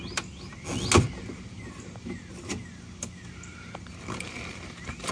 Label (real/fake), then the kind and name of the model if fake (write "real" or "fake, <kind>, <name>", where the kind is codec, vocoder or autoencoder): real